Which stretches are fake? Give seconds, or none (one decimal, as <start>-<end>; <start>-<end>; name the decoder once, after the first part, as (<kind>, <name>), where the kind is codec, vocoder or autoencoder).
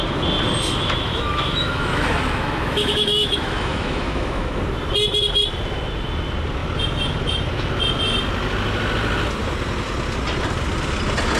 0.7-4.6 (autoencoder, DAC-VAE)